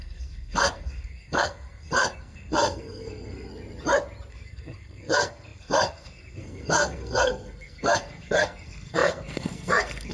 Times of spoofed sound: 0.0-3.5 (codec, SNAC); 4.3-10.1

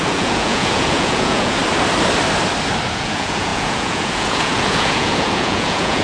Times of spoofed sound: 0.0-1.6 (vocoder, Vocos); 2.9-6.0

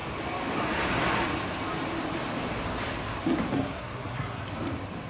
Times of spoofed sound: 3.5-4.4 (codec, SNAC)

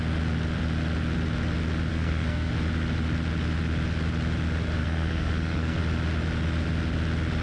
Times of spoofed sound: 1.9-2.5 (codec, SNAC); 4.8-5.8

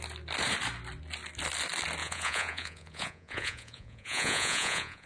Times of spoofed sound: 2.0-5.1 (vocoder, Vocos)